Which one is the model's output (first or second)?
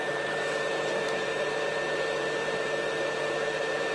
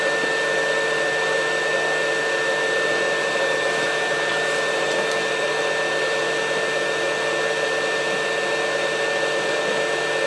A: first